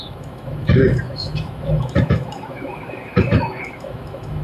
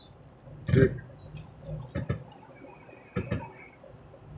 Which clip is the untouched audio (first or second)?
second